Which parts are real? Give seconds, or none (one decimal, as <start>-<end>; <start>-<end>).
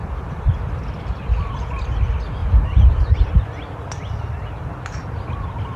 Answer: 1.1-2.4; 3.0-5.8